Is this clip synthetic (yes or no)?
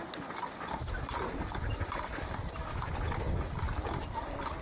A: no